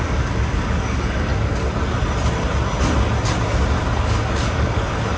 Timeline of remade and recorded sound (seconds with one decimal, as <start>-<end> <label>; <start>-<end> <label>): 0.0-1.3 remade; 1.3-4.0 recorded; 4.0-5.2 remade